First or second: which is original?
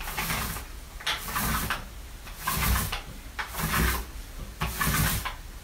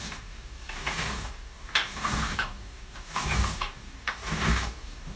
first